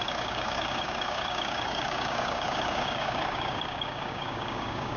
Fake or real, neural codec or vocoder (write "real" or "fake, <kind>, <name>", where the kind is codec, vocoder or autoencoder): fake, codec, DAC